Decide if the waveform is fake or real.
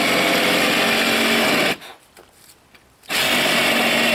real